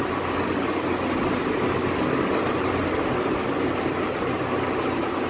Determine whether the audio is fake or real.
real